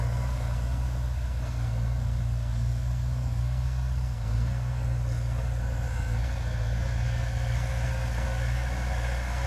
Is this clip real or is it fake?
fake